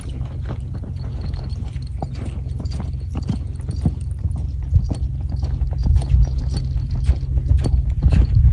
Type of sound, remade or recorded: recorded